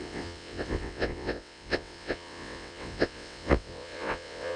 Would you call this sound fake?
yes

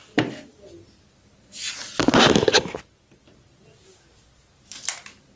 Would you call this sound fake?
no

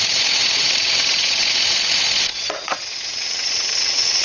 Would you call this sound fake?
yes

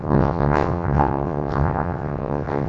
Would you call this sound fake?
yes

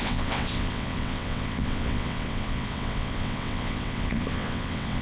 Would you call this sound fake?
yes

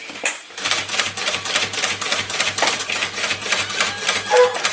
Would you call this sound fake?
no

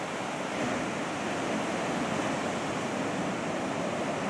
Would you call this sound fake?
no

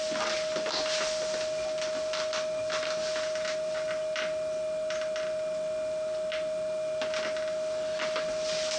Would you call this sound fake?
no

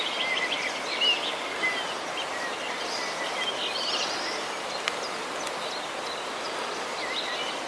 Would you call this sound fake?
no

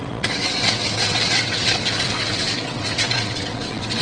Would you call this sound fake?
yes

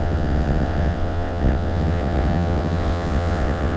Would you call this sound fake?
yes